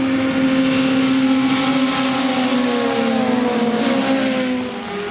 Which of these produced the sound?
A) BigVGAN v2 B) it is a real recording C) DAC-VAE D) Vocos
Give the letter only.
B